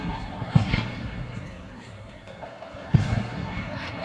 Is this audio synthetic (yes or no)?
yes